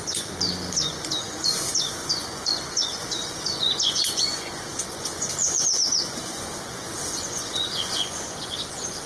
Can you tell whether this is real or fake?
fake